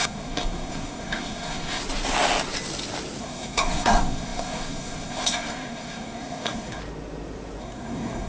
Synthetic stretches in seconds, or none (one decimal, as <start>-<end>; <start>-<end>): 0.0-1.8; 3.2-6.8; 7.6-8.3

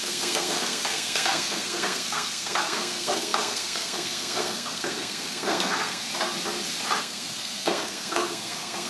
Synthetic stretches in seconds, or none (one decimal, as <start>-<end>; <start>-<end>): 0.0-6.1; 7.0-8.9

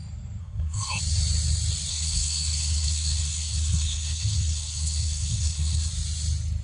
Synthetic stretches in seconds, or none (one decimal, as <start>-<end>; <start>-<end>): 0.4-1.0; 1.9-5.9

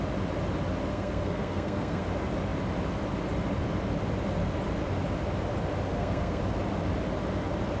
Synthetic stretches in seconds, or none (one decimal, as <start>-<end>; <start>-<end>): 0.9-2.0; 5.9-6.4

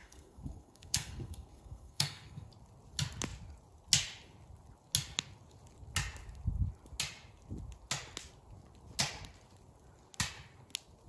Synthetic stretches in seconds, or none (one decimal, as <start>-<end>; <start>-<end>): 0.0-2.5

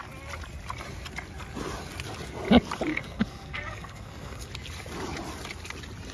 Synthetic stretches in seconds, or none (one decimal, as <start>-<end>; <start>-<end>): 2.9-4.5